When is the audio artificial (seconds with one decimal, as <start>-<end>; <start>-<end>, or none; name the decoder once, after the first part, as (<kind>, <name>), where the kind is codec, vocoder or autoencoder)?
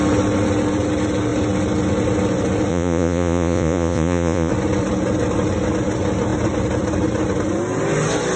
2.7-4.5 (vocoder, Vocos)